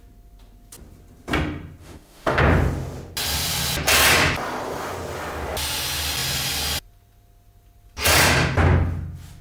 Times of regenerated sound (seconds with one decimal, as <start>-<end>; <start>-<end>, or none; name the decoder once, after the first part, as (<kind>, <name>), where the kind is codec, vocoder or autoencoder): 1.8-2.4 (autoencoder, DAC-VAE)